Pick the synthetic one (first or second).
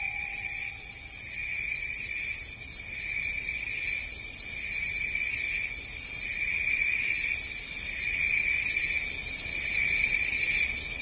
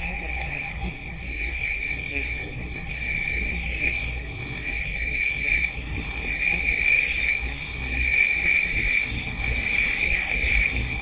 second